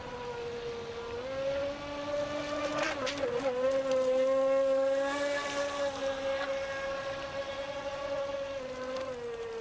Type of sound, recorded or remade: recorded